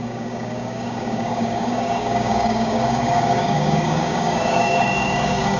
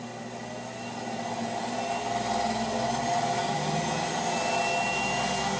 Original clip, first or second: second